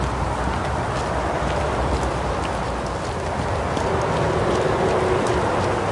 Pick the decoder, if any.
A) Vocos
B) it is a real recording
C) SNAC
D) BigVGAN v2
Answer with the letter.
B